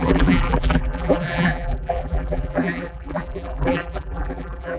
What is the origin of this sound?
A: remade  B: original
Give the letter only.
A